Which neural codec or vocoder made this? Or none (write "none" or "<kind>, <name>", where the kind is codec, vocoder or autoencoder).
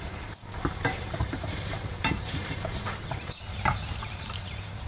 vocoder, BigVGAN v2